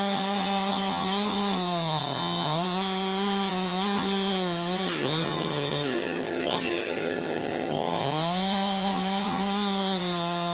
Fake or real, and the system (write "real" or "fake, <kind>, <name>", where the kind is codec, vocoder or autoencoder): fake, vocoder, HiFi-GAN